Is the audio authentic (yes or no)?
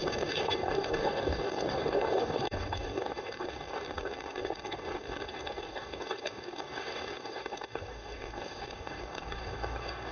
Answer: no